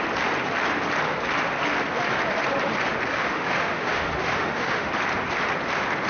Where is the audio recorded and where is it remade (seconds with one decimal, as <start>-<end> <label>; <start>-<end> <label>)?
0.0-3.1 recorded; 3.1-4.9 remade; 4.9-6.1 recorded